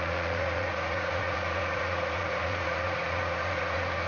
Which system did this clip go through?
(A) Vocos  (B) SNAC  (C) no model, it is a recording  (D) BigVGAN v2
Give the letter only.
A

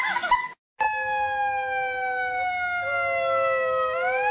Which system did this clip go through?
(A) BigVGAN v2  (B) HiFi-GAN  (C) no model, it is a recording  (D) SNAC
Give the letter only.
C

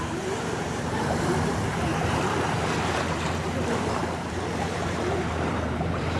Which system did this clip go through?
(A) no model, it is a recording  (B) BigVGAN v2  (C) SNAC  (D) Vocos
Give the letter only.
B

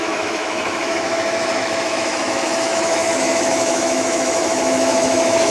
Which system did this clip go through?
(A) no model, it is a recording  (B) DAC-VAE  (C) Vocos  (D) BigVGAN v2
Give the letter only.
B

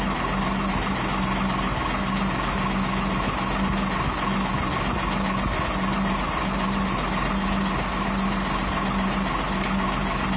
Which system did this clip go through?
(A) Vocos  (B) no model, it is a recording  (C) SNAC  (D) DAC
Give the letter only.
B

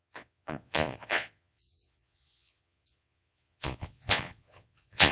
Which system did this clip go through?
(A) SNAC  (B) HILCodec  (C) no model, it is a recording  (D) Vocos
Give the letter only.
D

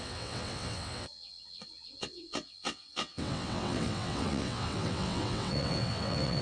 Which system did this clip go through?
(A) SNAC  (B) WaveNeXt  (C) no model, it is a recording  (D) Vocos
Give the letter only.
B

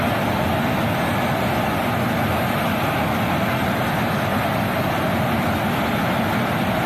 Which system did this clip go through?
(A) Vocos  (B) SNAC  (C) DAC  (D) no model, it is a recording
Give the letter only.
D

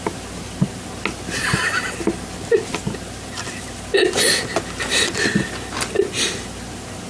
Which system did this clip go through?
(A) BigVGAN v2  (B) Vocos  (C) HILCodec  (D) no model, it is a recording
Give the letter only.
D